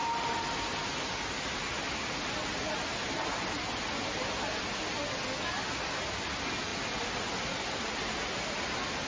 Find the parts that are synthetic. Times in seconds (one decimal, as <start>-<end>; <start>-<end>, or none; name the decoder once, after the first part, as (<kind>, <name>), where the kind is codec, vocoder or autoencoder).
6.7-7.8 (vocoder, BigVGAN v2)